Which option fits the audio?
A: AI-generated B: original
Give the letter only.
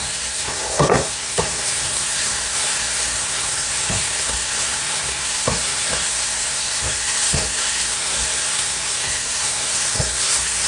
A